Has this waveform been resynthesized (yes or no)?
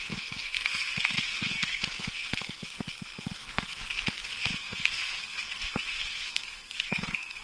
yes